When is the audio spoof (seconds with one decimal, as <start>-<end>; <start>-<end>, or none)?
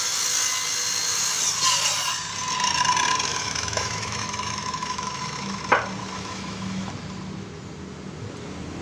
3.3-5.6; 6.0-6.9